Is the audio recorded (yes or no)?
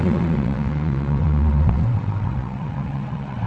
no